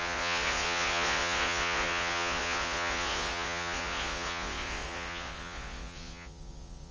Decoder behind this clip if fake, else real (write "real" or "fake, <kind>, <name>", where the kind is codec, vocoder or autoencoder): fake, vocoder, Vocos